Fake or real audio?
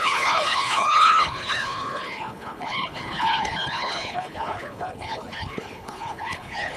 fake